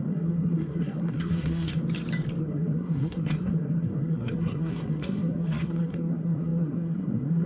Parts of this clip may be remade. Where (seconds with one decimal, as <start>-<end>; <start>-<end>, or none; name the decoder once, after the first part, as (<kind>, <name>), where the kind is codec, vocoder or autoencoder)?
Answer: 0.0-1.8 (codec, SNAC); 2.4-7.5